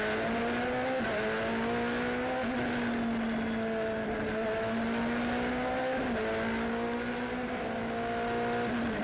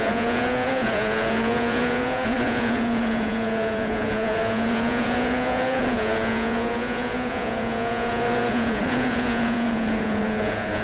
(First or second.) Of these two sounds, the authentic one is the first